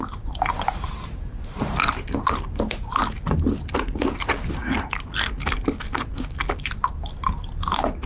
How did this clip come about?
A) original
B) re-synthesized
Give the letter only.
A